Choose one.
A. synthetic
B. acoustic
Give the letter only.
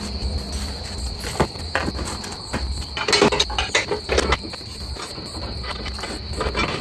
B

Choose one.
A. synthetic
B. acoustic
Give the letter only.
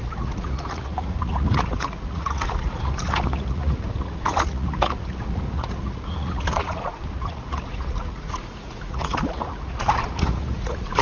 A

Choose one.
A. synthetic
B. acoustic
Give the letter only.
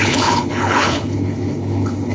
A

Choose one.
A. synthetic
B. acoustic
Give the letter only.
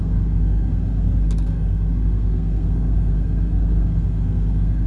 A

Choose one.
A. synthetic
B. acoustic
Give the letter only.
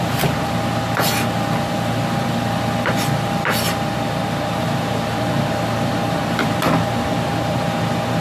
B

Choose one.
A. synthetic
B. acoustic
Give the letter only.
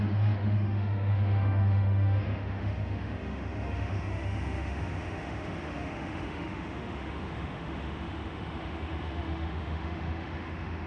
A